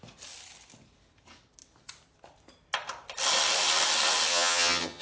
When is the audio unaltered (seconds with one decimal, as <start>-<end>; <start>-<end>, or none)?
0.0-4.3